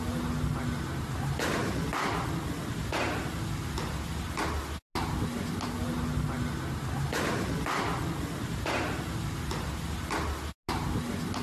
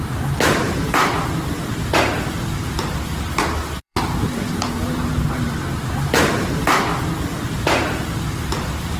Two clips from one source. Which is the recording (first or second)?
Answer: first